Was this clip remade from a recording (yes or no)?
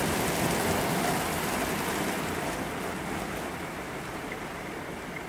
no